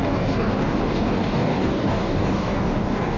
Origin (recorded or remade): remade